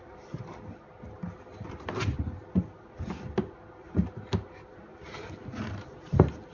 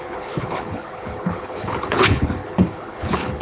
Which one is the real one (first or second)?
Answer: first